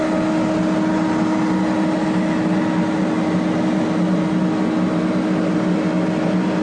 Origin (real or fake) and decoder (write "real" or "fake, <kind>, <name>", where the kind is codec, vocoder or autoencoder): real